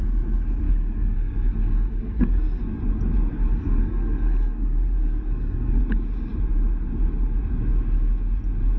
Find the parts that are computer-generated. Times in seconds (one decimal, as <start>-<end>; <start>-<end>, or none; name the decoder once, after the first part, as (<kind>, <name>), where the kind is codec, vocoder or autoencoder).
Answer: 0.0-2.6 (codec, SNAC); 3.3-5.8